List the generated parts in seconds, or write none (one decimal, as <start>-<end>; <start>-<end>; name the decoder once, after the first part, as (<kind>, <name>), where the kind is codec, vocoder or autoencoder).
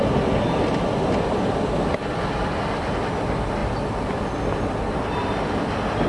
none